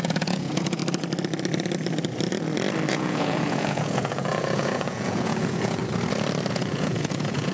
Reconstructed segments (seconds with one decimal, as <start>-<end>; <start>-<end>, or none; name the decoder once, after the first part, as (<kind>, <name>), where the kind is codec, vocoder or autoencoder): 0.0-0.8 (vocoder, Vocos); 2.9-5.8; 6.5-7.5